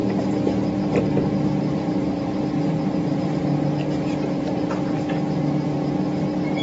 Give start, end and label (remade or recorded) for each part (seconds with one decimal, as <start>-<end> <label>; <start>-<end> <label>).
0.0-1.7 recorded; 1.7-3.4 remade; 3.4-6.6 recorded

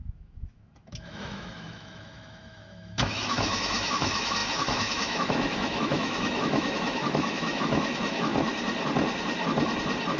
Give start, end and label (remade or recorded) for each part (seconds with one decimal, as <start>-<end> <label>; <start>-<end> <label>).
0.0-8.3 remade; 8.3-10.2 recorded

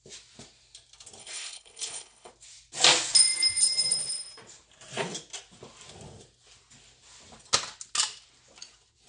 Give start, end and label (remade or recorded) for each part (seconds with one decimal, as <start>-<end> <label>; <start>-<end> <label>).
0.0-1.2 recorded; 1.2-2.3 remade; 2.3-9.1 recorded

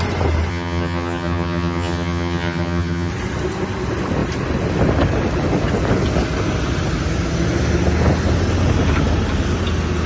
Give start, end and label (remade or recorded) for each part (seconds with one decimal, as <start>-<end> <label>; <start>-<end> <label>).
0.0-0.5 recorded; 0.5-3.1 remade; 3.1-10.1 recorded

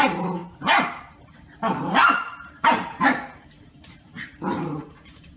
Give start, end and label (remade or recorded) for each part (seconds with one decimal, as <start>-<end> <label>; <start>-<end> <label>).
0.0-0.4 recorded; 0.4-1.0 remade; 1.0-2.0 recorded; 2.0-5.4 remade